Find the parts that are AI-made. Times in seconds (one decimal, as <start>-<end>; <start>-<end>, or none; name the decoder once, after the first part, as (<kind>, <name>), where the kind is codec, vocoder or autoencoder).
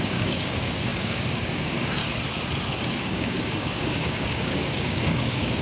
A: 0.0-2.0 (codec, DAC); 2.9-5.6